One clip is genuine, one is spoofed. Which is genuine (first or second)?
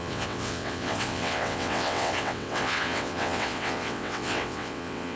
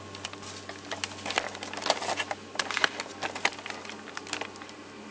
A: second